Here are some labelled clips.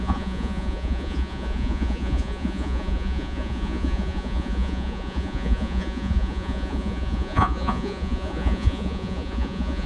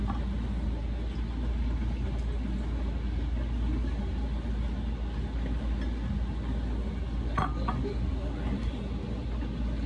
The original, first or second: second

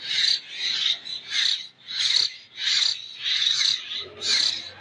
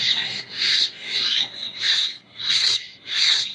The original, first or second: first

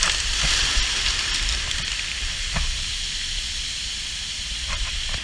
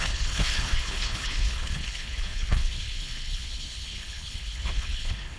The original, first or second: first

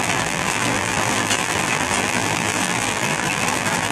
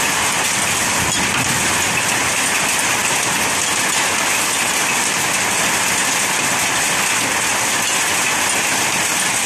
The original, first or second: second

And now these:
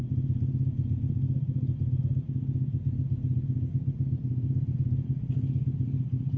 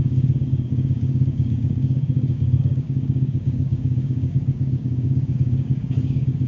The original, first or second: first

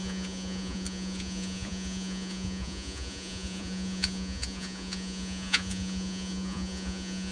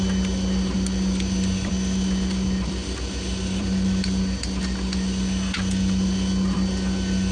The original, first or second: second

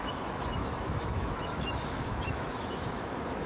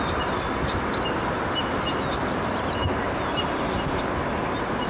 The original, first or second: second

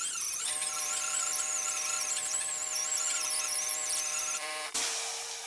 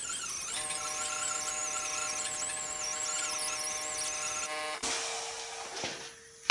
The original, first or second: second